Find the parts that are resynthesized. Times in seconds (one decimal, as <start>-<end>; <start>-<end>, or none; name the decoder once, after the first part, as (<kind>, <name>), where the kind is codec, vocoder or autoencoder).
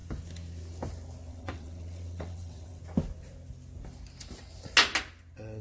1.3-2.8 (vocoder, WaveNeXt)